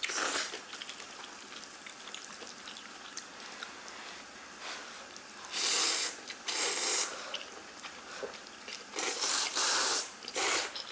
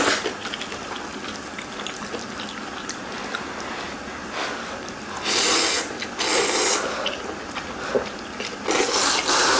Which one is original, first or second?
second